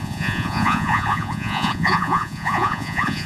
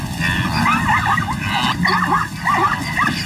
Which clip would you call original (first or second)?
second